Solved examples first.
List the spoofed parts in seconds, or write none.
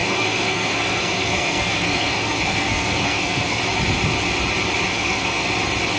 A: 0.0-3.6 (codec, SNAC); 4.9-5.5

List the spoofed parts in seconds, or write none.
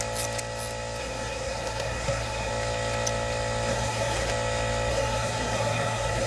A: 1.0-2.5 (codec, SNAC); 3.7-4.3; 4.9-6.3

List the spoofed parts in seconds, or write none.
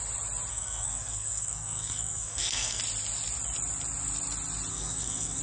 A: 0.5-2.8 (codec, SNAC); 4.7-5.4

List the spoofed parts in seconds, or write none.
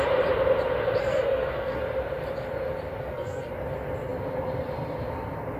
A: 1.0-1.8 (codec, SNAC); 3.0-3.5